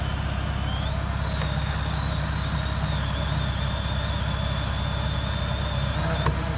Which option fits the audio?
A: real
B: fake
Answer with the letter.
A